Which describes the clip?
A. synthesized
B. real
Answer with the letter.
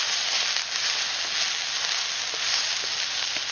B